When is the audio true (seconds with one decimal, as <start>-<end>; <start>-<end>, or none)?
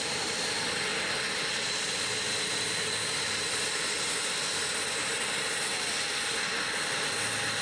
0.0-7.6